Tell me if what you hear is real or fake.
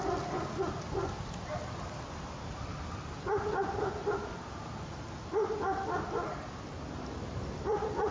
real